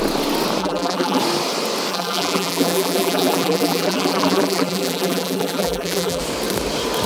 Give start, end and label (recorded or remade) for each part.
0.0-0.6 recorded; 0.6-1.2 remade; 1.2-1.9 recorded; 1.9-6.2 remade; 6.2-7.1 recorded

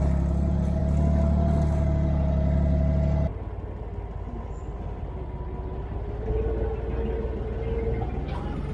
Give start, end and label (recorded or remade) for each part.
0.0-8.7 recorded